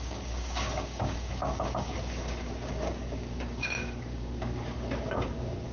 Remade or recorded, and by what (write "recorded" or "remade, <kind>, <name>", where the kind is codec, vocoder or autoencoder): remade, codec, DAC